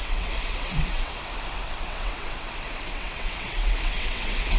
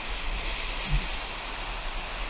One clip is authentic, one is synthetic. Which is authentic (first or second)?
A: second